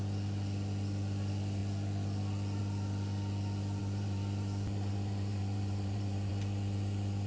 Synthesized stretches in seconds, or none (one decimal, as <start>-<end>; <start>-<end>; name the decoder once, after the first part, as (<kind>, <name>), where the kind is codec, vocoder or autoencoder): 3.8-6.3 (vocoder, BigVGAN v2)